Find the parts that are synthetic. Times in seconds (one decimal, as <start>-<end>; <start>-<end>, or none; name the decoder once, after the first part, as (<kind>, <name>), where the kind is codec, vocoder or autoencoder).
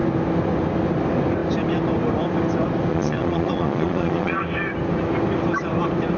2.9-4.4 (vocoder, Vocos)